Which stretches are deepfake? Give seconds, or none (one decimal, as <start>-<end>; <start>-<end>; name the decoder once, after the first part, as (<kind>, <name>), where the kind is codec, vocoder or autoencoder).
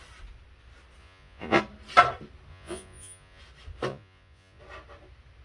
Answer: 1.0-1.6 (vocoder, Vocos); 2.5-3.4; 3.9-4.6